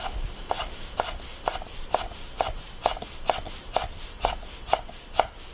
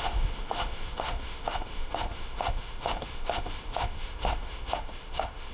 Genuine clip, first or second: first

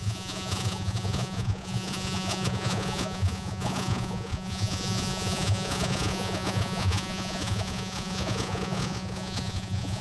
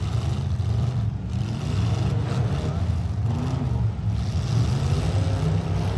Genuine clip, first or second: second